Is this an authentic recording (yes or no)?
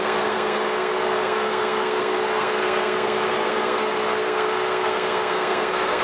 no